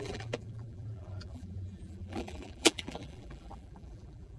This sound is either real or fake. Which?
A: fake